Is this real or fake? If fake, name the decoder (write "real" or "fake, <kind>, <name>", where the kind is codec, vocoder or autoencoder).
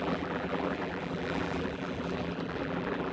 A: fake, vocoder, BigVGAN v2